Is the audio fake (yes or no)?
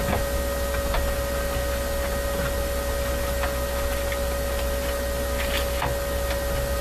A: no